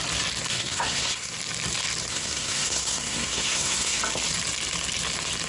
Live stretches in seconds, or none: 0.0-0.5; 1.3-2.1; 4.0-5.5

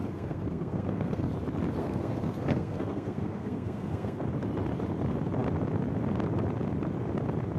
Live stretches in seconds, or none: 1.3-1.8; 4.2-7.6

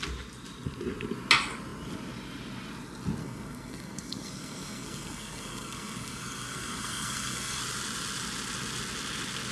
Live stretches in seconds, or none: 0.0-3.2; 7.6-9.5

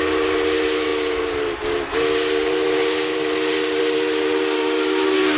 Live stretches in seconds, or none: 0.0-5.4

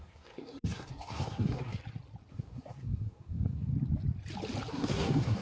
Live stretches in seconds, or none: 1.8-2.3; 3.7-4.7

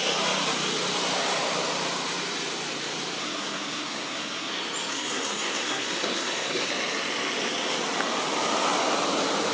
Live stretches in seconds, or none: 0.0-3.2; 4.5-4.9; 6.7-9.5

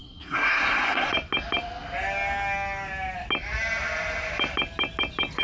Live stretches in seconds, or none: 1.1-5.4